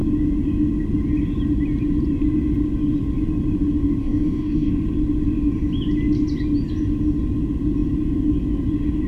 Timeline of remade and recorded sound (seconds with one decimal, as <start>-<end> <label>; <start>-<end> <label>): 0.0-4.0 recorded; 4.0-4.7 remade; 4.7-9.1 recorded